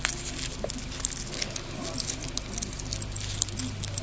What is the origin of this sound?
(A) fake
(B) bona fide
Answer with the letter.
B